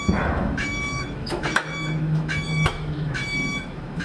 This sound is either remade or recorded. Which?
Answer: remade